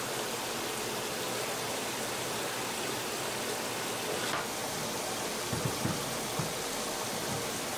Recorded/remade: recorded